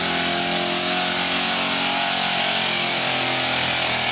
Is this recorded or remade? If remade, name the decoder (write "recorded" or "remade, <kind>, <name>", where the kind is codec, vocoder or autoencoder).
recorded